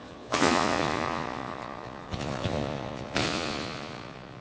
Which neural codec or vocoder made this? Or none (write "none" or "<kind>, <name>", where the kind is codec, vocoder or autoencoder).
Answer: vocoder, Vocos